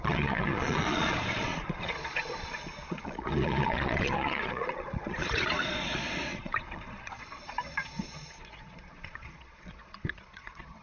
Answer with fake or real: fake